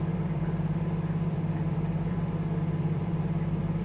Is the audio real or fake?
fake